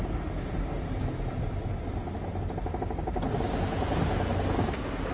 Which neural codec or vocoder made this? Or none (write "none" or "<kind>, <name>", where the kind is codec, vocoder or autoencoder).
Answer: none